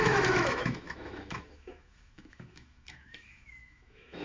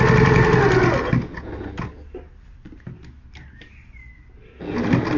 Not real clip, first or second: first